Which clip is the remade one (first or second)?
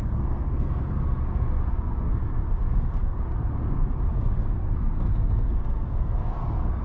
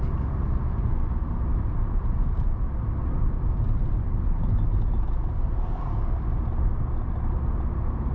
first